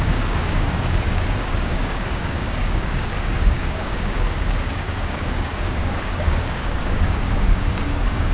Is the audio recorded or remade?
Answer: remade